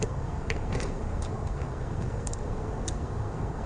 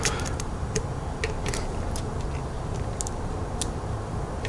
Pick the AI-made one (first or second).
first